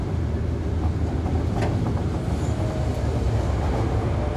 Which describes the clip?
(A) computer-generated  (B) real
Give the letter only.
B